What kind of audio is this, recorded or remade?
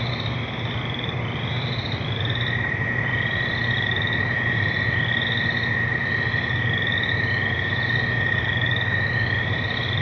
recorded